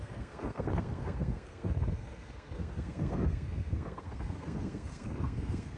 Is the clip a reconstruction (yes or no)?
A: yes